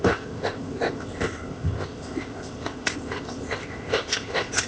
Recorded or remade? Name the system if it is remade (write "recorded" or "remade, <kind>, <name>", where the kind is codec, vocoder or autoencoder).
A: remade, codec, ZipCodec